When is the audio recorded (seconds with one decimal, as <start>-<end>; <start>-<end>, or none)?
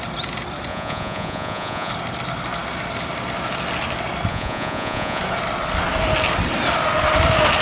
0.0-0.7; 1.9-4.3; 5.2-7.6